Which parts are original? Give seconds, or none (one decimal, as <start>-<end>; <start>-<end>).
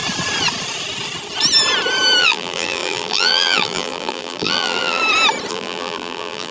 0.0-2.2; 5.0-5.5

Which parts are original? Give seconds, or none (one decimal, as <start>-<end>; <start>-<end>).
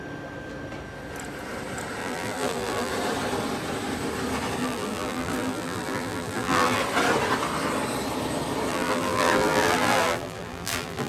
0.0-2.0; 2.9-4.6; 6.8-8.7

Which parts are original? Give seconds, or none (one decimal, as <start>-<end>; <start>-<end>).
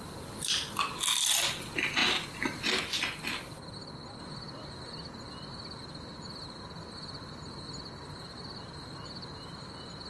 0.0-10.1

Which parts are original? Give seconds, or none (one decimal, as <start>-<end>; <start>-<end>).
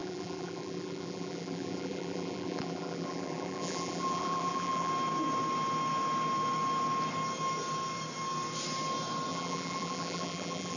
4.9-9.3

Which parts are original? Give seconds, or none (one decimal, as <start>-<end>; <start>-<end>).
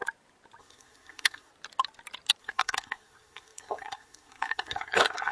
0.0-0.6; 1.5-2.4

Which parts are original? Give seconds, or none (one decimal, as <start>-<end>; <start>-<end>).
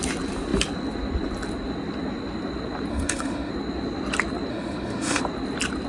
0.0-2.9; 3.5-4.5; 5.2-5.9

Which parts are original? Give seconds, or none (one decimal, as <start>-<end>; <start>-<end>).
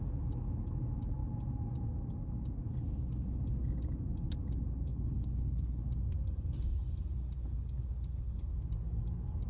0.0-4.9; 5.8-9.5